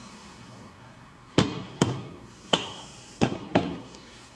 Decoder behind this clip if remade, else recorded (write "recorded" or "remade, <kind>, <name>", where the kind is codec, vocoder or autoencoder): remade, codec, SNAC